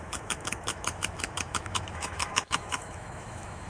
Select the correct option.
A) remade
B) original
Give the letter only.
A